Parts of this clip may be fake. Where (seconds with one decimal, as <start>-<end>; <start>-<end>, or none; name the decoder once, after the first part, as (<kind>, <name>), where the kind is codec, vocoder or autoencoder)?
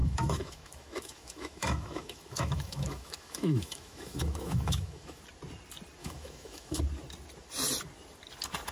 0.0-5.2 (autoencoder, DAC-VAE); 6.0-6.8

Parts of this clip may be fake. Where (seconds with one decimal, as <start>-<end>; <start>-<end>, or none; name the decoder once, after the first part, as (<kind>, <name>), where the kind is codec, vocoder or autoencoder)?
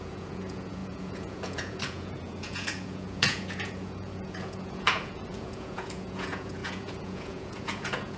0.0-8.2 (vocoder, Vocos)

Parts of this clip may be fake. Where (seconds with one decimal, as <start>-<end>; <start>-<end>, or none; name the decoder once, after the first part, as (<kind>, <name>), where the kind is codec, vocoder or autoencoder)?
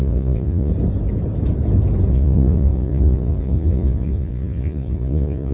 0.0-0.7 (vocoder, Vocos); 2.1-5.5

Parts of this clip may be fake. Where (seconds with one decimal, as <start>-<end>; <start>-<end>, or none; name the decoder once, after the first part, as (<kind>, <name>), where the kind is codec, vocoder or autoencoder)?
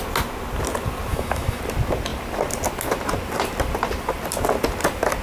1.1-1.6 (autoencoder, DAC-VAE)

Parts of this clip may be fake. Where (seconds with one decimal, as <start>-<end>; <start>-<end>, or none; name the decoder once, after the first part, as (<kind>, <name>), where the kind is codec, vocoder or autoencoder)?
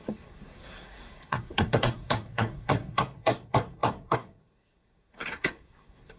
0.0-6.2 (codec, SNAC)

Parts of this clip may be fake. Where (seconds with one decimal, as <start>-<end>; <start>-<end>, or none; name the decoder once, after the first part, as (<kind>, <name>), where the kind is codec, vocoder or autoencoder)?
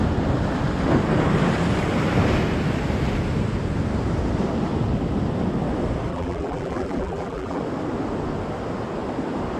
6.1-7.6 (vocoder, BigVGAN v2)